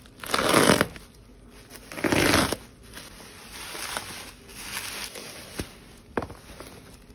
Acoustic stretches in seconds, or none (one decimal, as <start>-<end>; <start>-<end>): 0.0-7.1